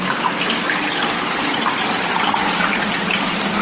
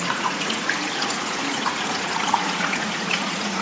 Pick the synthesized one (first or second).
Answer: second